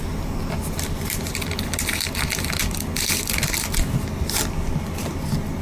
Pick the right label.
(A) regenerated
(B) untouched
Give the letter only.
B